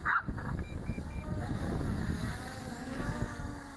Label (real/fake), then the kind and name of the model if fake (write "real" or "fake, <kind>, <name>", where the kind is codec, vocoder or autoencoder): fake, codec, DAC